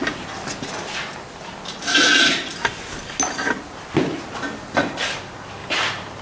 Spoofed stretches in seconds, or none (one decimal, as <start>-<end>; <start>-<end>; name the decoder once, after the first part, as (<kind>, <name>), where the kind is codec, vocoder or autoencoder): 5.6-6.2 (vocoder, BigVGAN v2)